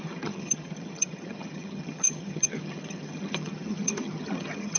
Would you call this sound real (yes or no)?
no